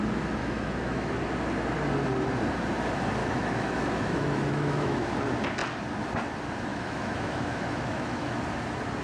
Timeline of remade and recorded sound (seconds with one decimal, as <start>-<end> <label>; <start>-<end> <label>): 0.0-0.4 recorded; 0.4-1.1 remade; 1.1-3.2 recorded; 3.2-5.1 remade; 5.1-6.7 recorded; 6.7-8.4 remade; 8.4-9.0 recorded